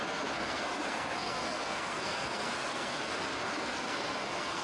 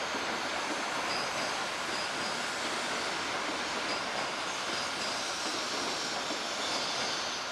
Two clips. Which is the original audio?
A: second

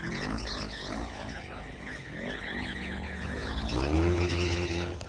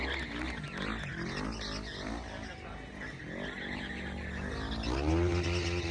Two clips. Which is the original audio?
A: second